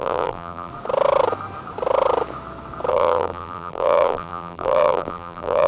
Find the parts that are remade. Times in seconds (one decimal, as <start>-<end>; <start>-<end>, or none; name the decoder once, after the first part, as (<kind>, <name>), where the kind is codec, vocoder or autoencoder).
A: 0.0-0.7 (vocoder, BigVGAN v2); 2.9-5.7